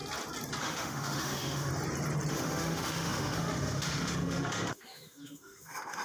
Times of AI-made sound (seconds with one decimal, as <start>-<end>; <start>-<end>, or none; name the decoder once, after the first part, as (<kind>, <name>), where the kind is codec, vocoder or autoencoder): 0.6-1.7 (autoencoder, DAC-VAE); 2.3-6.0